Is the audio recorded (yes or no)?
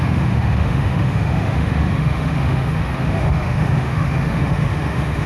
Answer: no